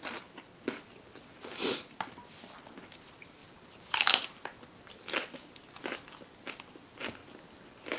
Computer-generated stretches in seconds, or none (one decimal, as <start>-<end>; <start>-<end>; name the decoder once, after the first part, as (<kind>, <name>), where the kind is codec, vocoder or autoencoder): 0.0-7.2 (vocoder, BigVGAN v2)